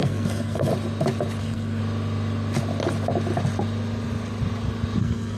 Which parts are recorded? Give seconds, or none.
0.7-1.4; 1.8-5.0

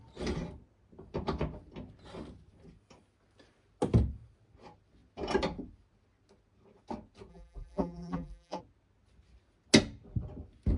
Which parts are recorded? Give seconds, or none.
0.0-7.3; 8.6-10.8

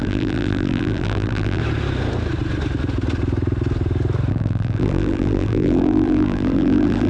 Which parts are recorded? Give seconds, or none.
1.6-4.3

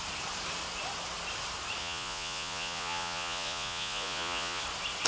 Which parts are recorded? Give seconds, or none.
0.0-1.8; 4.6-5.1

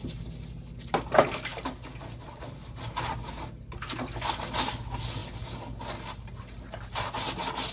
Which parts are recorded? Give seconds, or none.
0.0-7.7

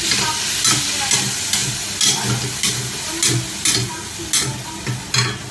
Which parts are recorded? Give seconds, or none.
0.0-5.5